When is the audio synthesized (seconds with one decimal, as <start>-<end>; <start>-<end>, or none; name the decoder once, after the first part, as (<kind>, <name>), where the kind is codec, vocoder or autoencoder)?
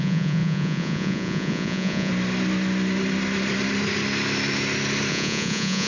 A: 0.0-2.1 (vocoder, Vocos); 5.1-5.9